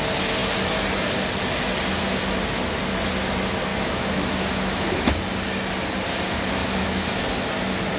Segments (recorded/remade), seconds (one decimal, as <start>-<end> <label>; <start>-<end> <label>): 0.0-3.7 recorded; 3.7-5.1 remade; 5.1-6.6 recorded; 6.6-7.2 remade; 7.2-8.0 recorded